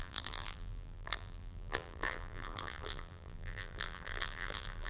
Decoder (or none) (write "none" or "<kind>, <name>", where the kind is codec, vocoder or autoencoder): vocoder, BigVGAN v2